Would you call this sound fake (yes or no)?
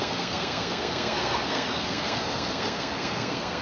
yes